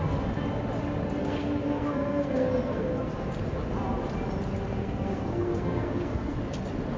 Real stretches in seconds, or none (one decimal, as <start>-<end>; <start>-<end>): 0.0-1.2; 3.1-4.8; 6.4-7.0